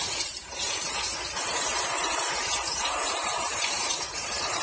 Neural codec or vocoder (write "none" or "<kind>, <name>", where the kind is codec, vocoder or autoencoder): vocoder, BigVGAN v2